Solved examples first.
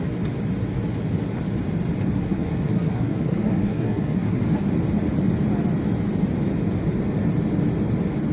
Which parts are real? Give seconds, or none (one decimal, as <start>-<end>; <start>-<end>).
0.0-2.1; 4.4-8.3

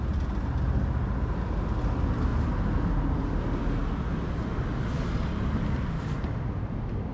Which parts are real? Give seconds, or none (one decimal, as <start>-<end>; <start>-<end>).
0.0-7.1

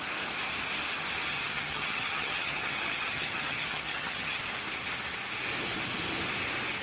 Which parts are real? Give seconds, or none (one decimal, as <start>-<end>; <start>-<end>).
0.0-1.3; 4.4-6.8